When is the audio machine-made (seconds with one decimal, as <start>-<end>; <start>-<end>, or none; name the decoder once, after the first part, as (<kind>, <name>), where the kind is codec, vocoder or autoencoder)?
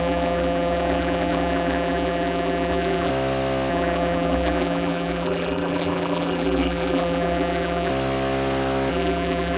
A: 0.0-3.1 (vocoder, BigVGAN v2); 3.7-7.9; 8.9-9.6